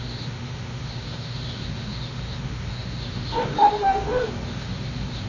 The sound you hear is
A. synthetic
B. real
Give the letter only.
A